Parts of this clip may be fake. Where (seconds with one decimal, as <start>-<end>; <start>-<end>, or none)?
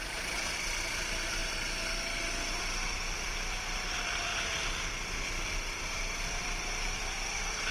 0.0-1.4; 2.6-7.7